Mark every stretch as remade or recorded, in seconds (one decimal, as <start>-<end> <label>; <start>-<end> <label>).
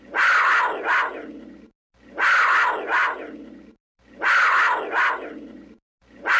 0.0-3.0 recorded; 3.0-4.2 remade; 4.2-6.4 recorded